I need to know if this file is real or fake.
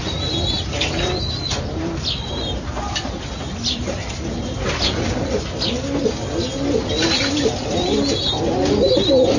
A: real